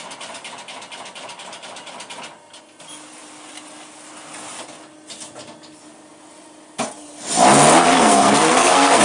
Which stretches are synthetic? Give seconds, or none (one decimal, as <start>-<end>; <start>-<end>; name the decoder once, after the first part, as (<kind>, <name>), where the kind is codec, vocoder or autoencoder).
7.8-9.0 (codec, SNAC)